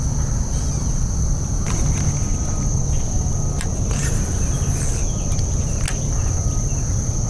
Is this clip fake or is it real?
real